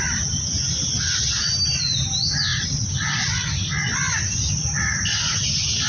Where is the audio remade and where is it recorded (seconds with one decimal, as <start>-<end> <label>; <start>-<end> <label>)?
0.0-5.9 recorded